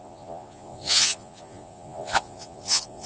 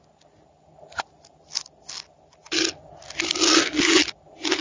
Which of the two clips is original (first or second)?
second